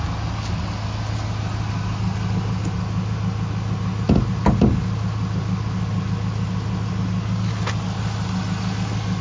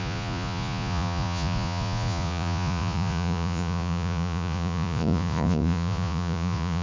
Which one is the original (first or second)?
first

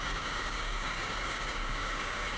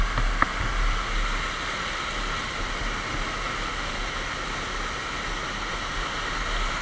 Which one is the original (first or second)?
second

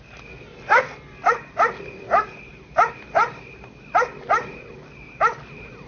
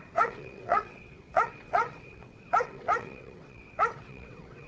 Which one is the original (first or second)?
first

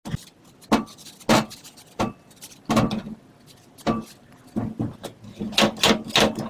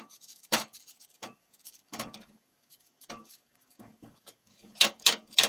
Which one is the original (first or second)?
first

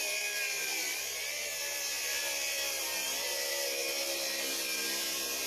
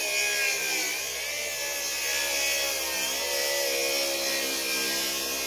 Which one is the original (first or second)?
second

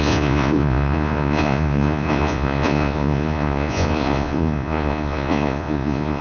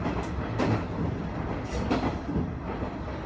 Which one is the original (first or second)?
second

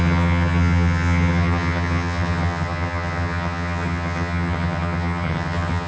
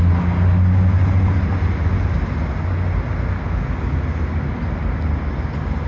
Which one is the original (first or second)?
second